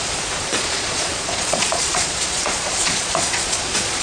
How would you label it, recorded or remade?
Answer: remade